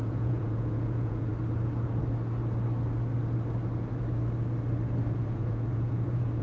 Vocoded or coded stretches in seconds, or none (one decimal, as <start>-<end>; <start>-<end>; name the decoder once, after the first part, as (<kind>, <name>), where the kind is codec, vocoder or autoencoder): 0.0-1.3 (vocoder, Vocos); 5.1-6.4